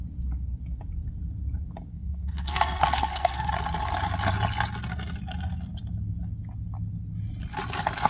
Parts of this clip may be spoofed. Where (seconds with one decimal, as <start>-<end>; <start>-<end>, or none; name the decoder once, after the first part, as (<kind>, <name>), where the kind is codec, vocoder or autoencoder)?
1.9-3.5 (codec, SNAC)